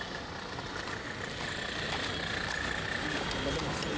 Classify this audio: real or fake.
real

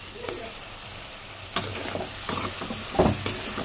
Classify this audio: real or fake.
real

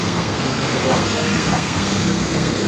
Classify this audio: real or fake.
fake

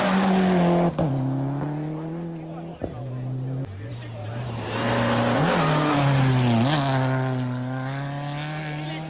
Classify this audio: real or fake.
real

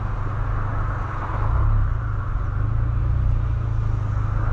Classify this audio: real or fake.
real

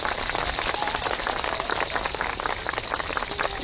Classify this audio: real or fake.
real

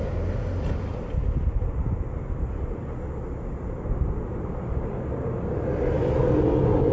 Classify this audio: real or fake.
real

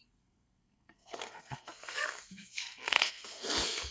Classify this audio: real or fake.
fake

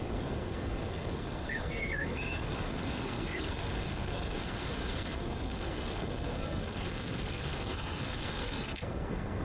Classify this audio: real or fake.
fake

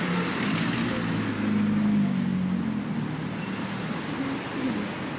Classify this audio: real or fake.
real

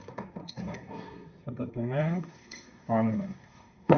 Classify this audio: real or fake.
fake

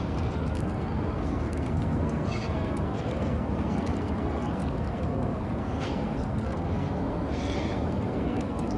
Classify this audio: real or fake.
fake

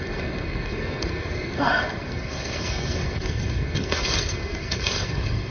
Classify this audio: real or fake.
fake